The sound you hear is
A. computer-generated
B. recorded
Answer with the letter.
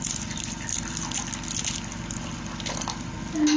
B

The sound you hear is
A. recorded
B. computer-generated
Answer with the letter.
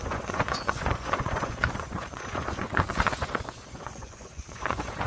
B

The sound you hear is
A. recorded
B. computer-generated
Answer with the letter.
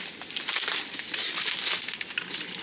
A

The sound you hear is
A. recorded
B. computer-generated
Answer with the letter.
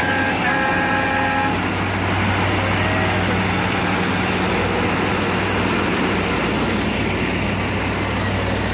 A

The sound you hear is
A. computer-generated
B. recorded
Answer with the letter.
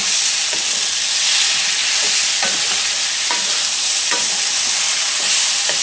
B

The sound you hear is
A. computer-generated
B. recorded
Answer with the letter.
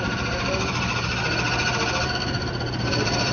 A